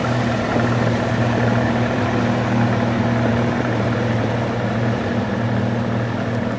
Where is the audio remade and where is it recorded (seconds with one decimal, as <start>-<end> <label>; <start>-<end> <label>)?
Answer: 0.0-2.2 remade; 2.2-3.3 recorded; 3.3-5.3 remade; 5.3-6.6 recorded